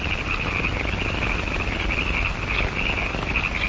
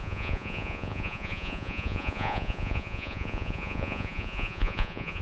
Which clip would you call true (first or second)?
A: first